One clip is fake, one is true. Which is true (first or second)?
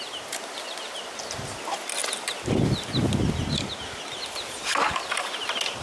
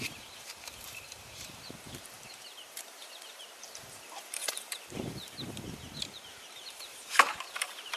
first